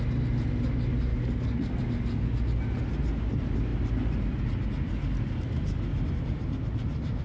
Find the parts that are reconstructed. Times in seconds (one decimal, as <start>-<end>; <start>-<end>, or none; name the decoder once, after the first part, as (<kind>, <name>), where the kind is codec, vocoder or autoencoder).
1.1-1.8 (codec, DAC)